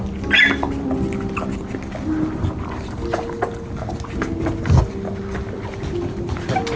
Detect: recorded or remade recorded